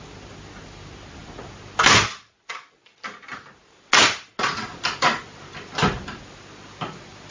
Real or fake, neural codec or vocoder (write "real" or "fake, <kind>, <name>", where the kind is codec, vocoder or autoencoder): real